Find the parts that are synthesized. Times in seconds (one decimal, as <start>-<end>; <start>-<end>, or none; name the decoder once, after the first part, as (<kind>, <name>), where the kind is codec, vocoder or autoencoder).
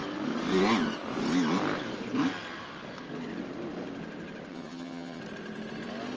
4.5-5.2 (vocoder, HiFi-GAN)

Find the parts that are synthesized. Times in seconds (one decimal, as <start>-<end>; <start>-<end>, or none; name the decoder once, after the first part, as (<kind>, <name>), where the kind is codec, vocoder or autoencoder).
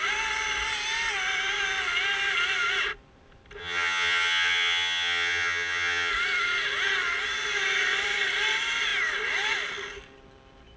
3.6-6.1 (vocoder, HiFi-GAN)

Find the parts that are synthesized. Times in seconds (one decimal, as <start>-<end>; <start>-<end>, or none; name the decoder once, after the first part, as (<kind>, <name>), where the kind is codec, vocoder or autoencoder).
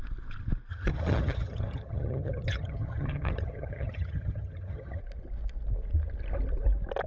0.7-5.0 (vocoder, HiFi-GAN)